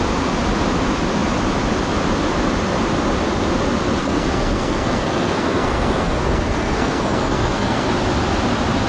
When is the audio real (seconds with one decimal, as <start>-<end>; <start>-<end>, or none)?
0.0-4.0; 7.9-8.9